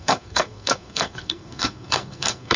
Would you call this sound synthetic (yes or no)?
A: yes